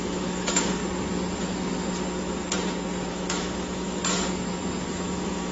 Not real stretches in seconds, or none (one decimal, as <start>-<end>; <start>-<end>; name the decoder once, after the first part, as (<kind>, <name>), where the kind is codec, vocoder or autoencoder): 0.0-0.8 (autoencoder, DAC-VAE); 3.1-4.0; 4.9-5.5